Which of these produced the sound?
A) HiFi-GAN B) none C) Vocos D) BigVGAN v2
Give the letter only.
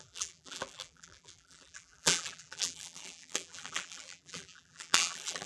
D